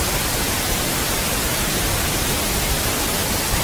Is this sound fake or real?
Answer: real